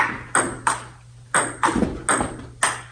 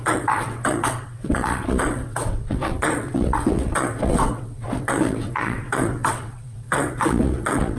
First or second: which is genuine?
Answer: first